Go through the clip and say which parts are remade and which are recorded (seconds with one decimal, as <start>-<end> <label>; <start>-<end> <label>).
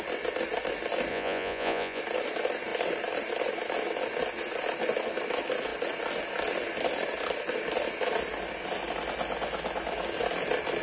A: 0.0-1.1 recorded; 1.1-2.0 remade; 2.0-10.8 recorded